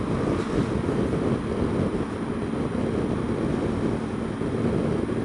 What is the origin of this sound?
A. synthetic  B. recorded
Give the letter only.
B